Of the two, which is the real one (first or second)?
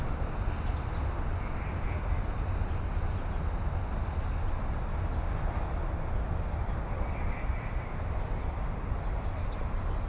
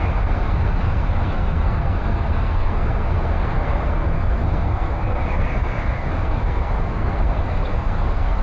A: first